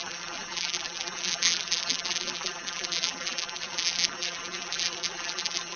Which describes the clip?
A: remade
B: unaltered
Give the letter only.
A